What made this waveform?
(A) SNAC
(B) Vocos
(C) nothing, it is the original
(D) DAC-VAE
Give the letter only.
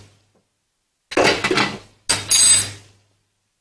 C